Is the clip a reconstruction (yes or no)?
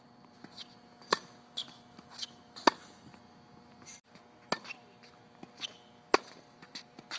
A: no